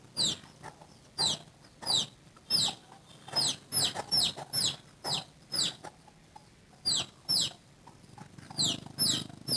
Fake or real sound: real